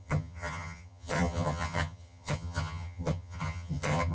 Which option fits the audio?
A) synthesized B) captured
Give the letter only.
A